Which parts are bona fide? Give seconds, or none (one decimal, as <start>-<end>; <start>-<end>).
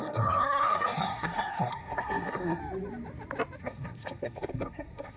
2.6-3.6